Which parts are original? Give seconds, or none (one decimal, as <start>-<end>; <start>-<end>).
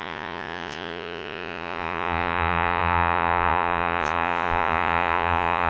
none